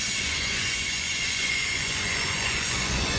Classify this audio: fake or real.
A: fake